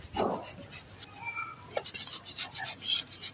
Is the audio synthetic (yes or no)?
no